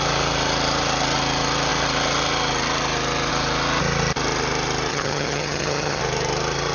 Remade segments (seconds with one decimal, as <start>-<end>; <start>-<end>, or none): 4.9-6.0

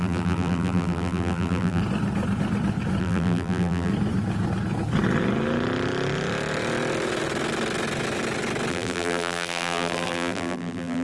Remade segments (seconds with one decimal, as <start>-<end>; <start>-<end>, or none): 0.0-1.8; 3.0-3.9; 8.7-11.0

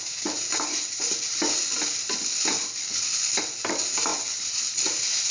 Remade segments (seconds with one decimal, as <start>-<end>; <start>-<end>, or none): none

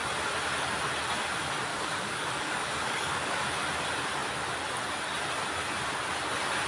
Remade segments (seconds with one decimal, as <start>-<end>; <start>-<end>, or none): 1.7-3.4

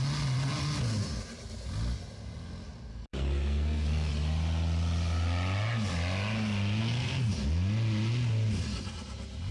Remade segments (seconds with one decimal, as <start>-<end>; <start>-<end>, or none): 2.9-4.1; 6.8-7.3

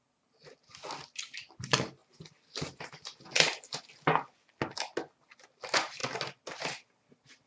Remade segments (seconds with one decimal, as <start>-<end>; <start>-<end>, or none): none

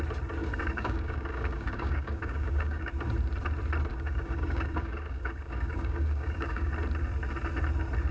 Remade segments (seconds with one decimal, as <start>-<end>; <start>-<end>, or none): 0.4-2.9; 3.9-6.7